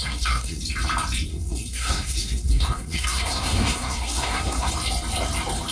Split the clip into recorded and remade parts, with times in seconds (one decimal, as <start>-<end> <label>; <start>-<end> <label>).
0.0-0.6 remade; 0.6-1.3 recorded; 1.3-4.7 remade; 4.7-5.7 recorded